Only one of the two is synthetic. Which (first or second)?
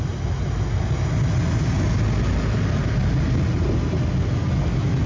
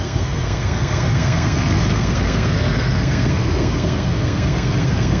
second